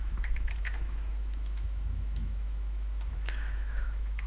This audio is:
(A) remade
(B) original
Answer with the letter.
A